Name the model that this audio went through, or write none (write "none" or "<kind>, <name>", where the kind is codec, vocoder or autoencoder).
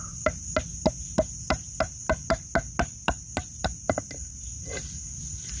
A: none